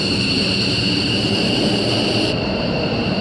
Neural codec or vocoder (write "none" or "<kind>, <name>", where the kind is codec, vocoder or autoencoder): vocoder, BigVGAN v2